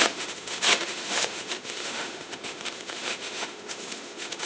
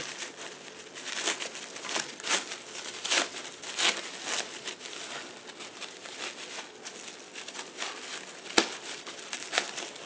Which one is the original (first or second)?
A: second